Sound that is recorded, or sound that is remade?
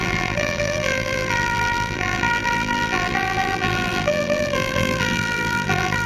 remade